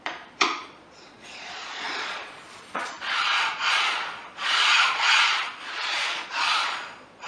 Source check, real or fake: fake